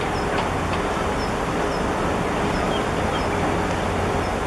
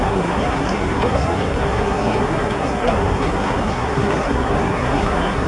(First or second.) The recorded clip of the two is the first